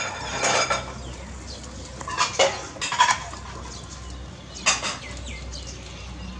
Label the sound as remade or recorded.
recorded